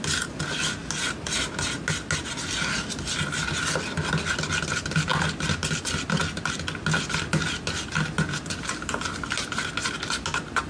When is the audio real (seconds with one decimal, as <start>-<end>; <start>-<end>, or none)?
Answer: 0.0-10.7